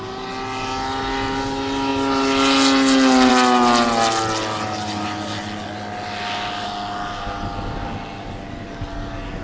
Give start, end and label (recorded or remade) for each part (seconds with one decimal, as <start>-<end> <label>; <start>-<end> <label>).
0.0-9.4 recorded